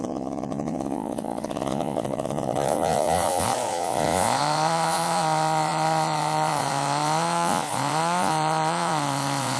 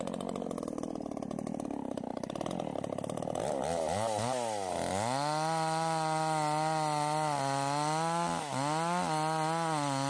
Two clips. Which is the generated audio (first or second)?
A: first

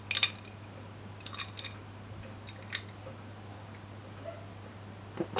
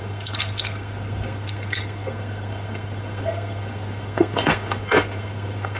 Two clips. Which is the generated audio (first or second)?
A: second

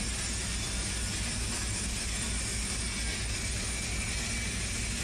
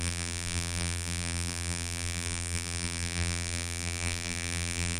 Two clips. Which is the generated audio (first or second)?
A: second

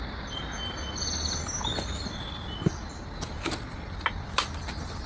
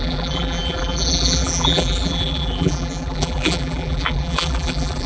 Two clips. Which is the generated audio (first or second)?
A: second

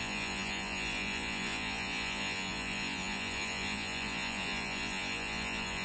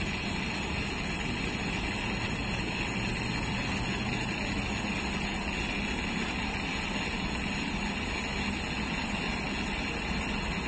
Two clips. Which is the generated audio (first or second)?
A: first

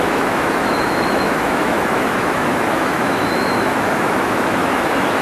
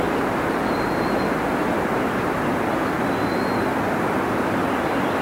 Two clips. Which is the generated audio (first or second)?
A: first